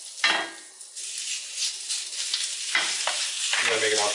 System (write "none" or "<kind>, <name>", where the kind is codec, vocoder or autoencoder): none